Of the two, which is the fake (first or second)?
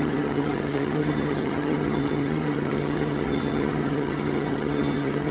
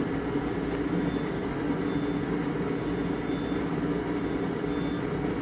first